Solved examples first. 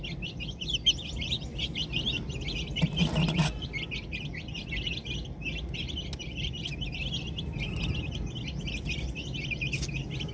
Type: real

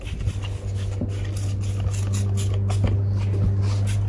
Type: real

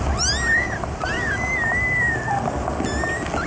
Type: real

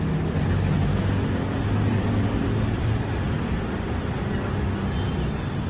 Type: real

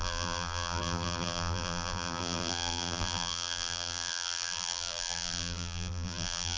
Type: fake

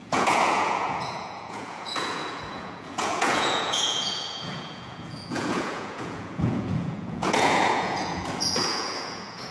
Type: fake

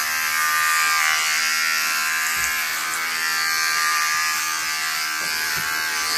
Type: real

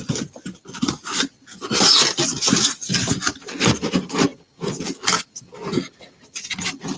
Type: real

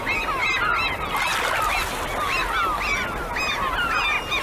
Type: real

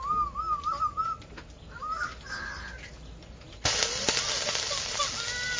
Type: real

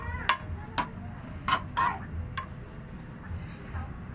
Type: real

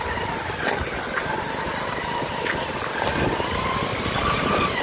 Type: real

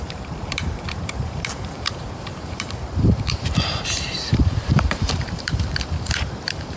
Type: fake